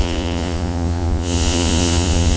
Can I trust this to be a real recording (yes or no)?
no